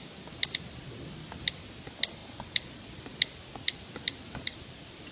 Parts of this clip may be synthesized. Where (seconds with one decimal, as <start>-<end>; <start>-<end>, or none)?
none